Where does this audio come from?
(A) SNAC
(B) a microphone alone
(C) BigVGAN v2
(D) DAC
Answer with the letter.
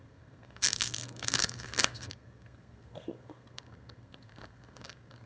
A